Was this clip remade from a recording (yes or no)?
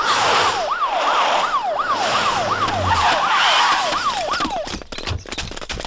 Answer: no